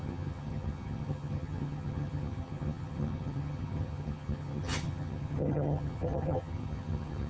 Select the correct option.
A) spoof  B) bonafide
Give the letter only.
A